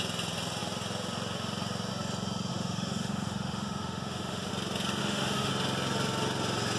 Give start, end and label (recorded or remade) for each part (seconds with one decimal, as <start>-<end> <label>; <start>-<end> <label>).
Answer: 0.0-2.5 recorded; 2.5-4.5 remade; 4.5-5.0 recorded; 5.0-5.5 remade; 5.5-6.8 recorded